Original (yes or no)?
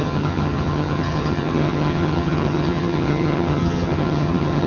no